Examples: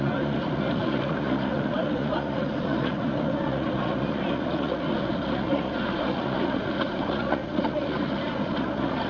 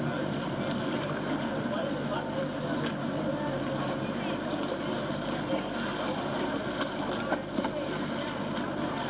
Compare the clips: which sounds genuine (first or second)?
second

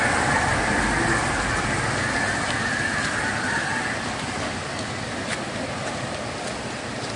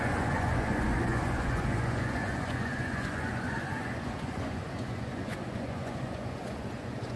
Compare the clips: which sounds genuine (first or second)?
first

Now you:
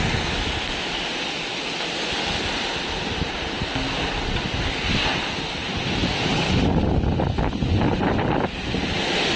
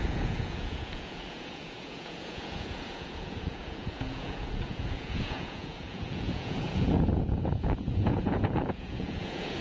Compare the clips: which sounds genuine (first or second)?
first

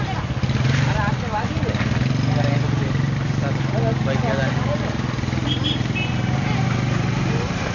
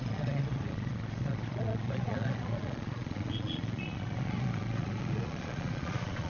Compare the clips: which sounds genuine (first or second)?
first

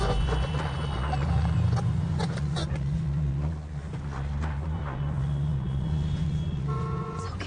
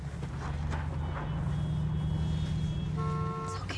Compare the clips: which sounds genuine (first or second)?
second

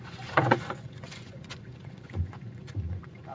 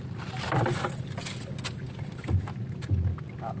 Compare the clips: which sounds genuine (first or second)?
second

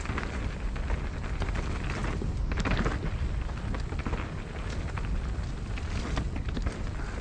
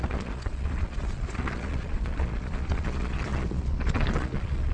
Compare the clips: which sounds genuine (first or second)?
first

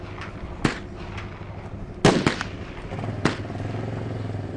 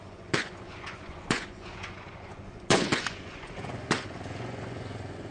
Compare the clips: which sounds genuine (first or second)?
first